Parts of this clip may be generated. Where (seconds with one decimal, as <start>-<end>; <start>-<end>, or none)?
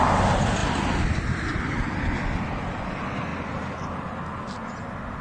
none